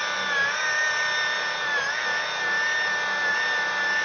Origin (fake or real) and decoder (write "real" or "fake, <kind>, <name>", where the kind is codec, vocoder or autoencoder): real